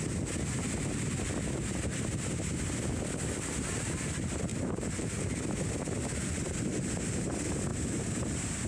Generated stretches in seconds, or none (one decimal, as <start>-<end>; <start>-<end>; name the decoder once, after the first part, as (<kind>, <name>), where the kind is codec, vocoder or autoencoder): 4.5-6.7 (vocoder, BigVGAN v2)